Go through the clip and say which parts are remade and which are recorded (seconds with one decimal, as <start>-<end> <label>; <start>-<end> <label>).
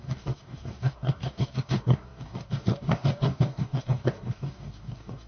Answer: 0.0-5.3 remade